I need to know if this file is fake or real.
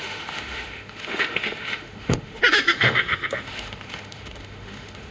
fake